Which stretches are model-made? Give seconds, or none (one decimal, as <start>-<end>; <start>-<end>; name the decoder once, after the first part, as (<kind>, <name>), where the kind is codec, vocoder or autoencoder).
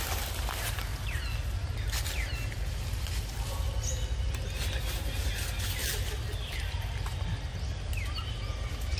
none